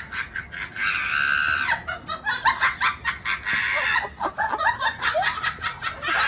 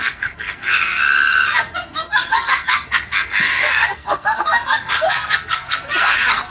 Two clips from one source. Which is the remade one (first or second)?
second